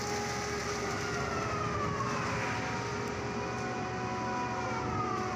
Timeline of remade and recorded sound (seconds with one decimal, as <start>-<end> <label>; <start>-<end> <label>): 0.0-5.4 recorded